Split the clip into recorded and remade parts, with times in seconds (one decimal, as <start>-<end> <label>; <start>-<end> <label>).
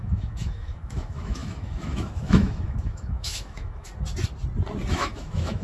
0.0-3.9 remade; 3.9-4.9 recorded; 4.9-5.6 remade